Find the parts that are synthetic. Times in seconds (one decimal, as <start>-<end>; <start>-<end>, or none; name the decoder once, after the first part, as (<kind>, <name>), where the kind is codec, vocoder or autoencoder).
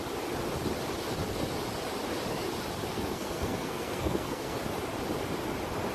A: 2.9-4.6 (codec, SNAC)